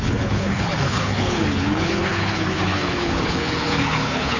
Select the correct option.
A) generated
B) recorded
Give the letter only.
A